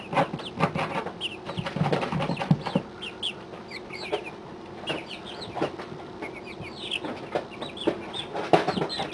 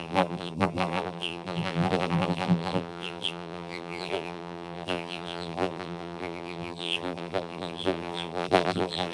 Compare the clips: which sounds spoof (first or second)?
second